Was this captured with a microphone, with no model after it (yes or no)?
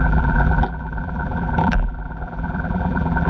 no